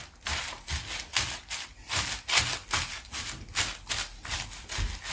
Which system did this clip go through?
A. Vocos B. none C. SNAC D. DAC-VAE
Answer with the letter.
B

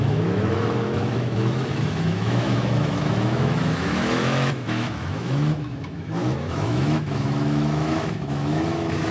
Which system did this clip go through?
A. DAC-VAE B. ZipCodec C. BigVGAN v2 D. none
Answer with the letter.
A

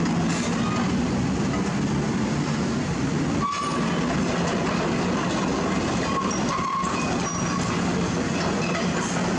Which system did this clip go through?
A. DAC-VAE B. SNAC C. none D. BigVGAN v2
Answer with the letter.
C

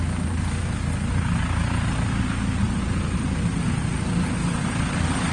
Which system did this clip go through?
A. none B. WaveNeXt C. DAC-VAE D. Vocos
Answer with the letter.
A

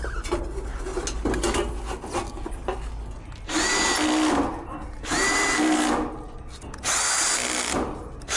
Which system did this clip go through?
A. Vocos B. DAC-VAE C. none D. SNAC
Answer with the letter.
C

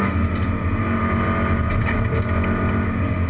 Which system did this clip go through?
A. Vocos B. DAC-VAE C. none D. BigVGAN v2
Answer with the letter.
C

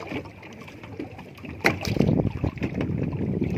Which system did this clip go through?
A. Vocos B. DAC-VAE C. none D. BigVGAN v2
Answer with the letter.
C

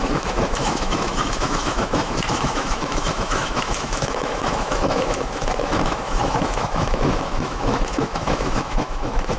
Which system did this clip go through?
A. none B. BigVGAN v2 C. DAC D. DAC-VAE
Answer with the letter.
D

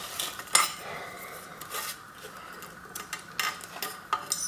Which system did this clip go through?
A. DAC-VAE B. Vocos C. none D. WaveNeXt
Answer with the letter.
C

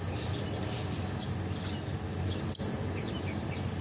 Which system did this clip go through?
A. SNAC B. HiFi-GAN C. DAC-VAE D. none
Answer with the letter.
D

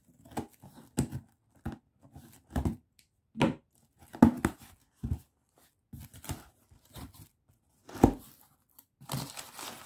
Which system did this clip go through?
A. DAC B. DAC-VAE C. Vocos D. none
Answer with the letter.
D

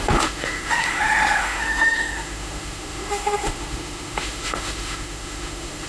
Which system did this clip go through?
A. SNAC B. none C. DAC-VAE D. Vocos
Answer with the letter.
C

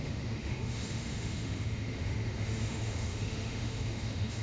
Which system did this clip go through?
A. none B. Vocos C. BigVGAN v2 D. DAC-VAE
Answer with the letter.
D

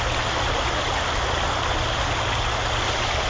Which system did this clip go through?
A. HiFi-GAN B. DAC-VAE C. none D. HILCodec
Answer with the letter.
C